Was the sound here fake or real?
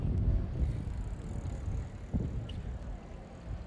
real